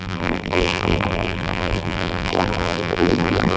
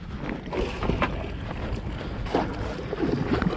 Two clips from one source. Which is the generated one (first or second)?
first